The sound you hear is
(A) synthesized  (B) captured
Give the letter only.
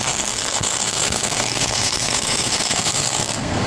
A